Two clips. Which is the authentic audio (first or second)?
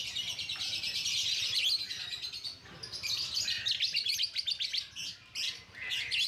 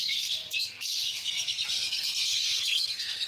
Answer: first